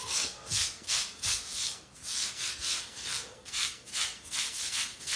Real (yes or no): no